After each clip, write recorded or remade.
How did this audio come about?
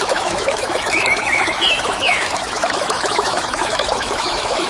remade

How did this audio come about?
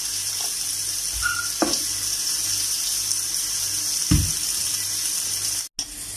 recorded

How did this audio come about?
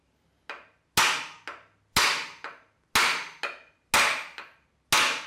recorded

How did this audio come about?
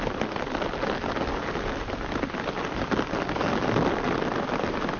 recorded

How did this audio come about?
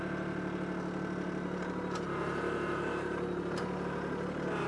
recorded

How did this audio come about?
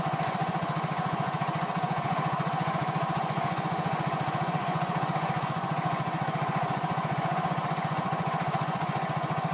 remade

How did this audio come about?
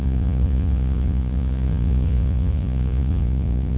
remade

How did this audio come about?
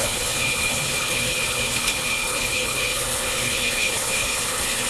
remade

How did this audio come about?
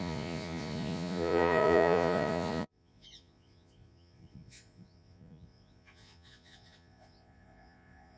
remade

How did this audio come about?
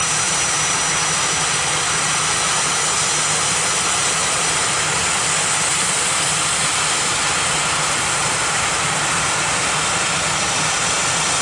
recorded